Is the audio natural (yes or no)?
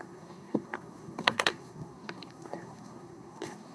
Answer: no